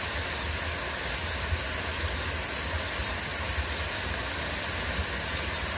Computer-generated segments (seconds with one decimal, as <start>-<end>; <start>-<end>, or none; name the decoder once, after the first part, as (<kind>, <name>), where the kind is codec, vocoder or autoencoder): none